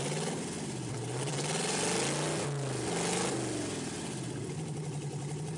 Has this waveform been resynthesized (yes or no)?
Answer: no